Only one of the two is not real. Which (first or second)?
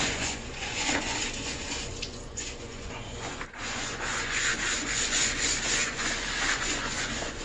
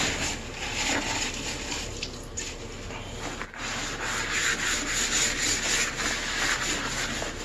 first